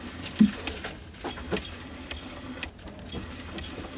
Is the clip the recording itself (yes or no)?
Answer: yes